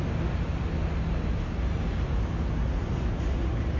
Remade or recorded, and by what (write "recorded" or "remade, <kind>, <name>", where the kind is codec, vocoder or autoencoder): recorded